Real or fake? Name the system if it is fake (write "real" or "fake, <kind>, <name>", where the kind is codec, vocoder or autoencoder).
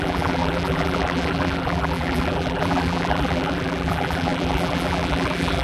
fake, vocoder, BigVGAN v2